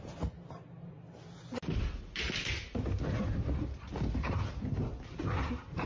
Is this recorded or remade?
recorded